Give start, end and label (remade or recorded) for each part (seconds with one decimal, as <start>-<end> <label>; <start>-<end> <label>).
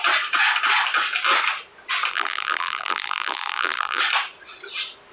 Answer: 0.0-2.1 recorded; 2.1-4.0 remade; 4.0-5.1 recorded